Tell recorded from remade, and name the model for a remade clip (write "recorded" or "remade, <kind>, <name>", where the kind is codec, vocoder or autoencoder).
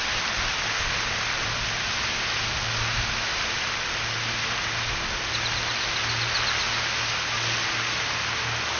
recorded